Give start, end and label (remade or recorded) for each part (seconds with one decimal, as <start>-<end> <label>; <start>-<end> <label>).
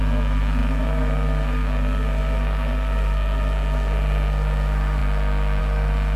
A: 0.0-6.2 remade